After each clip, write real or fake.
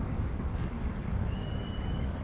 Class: fake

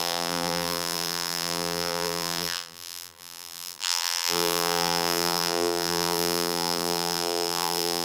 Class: fake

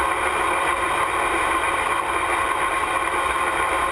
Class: real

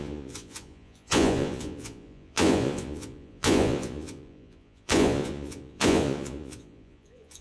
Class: fake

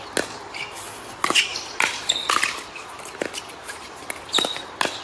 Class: real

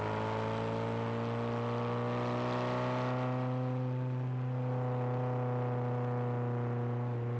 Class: real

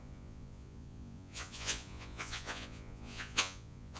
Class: fake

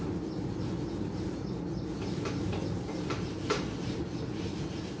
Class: real